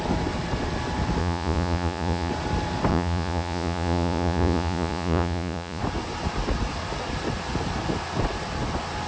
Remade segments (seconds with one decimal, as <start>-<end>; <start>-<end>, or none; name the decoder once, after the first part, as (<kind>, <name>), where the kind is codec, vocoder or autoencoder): 1.2-2.3 (vocoder, Vocos); 2.9-5.8